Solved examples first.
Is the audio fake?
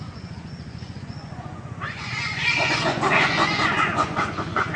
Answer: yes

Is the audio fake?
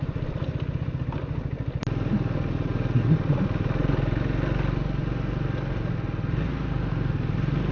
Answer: no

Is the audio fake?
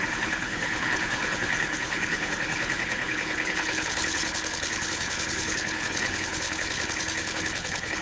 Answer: yes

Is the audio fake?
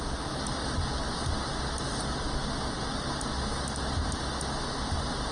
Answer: no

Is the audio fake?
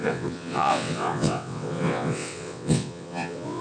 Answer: yes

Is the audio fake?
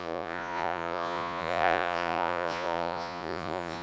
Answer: yes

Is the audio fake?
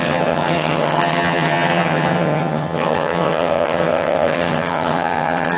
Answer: yes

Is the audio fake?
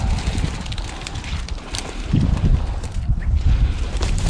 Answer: no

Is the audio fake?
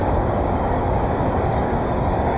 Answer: yes